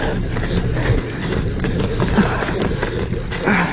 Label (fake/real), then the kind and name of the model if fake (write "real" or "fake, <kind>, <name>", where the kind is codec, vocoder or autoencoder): fake, vocoder, BigVGAN v2